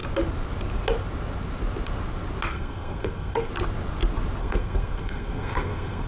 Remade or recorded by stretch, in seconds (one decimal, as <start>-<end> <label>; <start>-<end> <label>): 0.0-2.5 recorded; 2.5-3.5 remade; 3.5-4.4 recorded; 4.4-6.1 remade